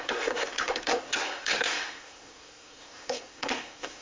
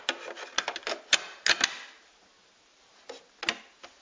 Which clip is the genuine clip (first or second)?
second